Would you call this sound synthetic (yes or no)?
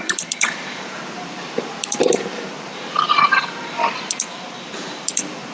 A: yes